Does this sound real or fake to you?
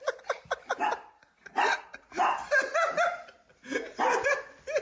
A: real